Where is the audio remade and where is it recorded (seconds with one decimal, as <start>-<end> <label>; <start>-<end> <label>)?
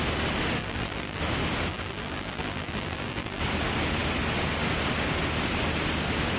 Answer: 0.0-0.6 recorded; 0.6-1.2 remade; 1.2-1.7 recorded; 1.7-3.4 remade; 3.4-6.4 recorded